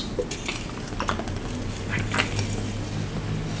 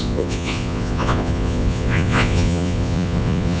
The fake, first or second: second